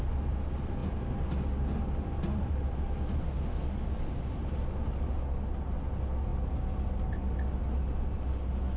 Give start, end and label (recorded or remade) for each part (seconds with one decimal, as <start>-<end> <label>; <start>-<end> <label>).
0.0-3.5 recorded; 3.5-4.1 remade; 4.1-8.8 recorded